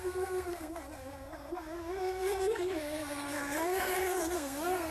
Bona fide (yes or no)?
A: no